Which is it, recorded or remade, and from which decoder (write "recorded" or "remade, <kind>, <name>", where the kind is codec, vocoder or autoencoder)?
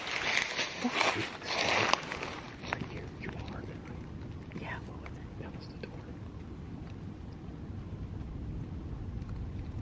recorded